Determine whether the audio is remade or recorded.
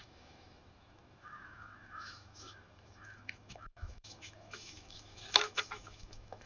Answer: remade